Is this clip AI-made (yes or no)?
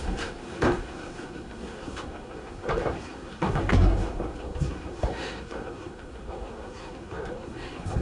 yes